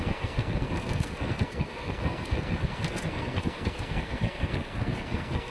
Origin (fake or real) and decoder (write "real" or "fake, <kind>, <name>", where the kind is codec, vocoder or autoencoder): fake, codec, SNAC